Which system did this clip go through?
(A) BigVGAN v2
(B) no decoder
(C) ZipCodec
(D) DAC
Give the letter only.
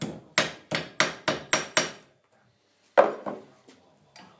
B